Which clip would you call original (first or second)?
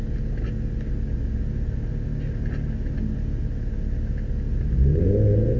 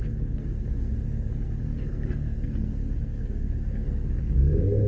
first